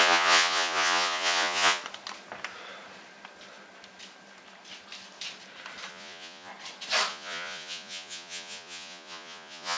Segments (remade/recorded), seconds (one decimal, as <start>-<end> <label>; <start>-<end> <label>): 0.0-1.8 remade; 1.8-5.9 recorded; 5.9-6.5 remade; 6.5-7.1 recorded; 7.1-9.8 remade